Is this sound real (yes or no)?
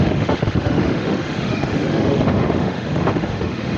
no